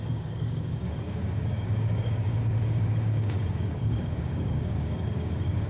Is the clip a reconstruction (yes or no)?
yes